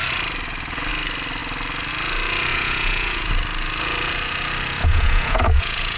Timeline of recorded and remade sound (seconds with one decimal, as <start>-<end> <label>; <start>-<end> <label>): 0.0-2.5 recorded; 2.5-3.3 remade; 3.3-4.8 recorded; 4.8-6.0 remade